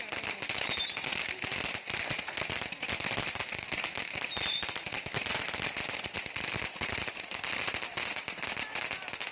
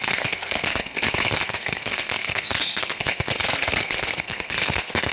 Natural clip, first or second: first